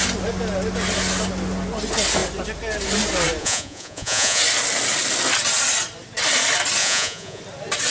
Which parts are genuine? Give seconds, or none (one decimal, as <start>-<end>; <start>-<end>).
0.0-3.4; 4.4-6.8; 7.4-7.9